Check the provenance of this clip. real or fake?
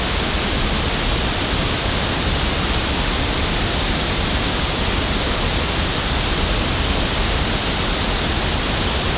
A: real